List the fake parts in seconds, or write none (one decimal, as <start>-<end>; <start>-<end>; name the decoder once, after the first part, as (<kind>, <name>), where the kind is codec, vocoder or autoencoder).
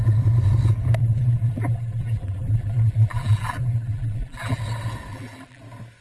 1.0-4.6 (vocoder, BigVGAN v2); 5.1-5.6